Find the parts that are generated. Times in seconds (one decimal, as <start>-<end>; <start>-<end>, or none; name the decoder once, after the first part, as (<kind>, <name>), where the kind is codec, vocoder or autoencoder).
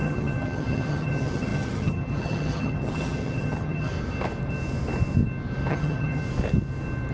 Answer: 0.0-3.9 (vocoder, HiFi-GAN); 5.7-6.2